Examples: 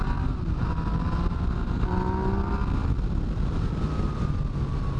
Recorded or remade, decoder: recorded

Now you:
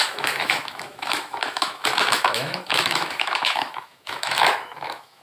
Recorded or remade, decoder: remade, autoencoder, DAC-VAE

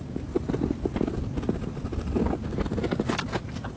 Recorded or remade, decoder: recorded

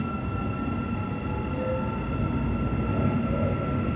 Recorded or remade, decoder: recorded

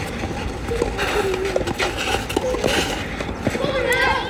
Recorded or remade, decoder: recorded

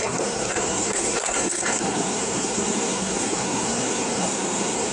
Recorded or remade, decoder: remade, codec, SNAC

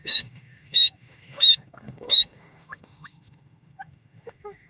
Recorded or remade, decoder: remade, autoencoder, DAC-VAE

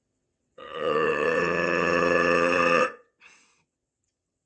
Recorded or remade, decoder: remade, vocoder, WaveNeXt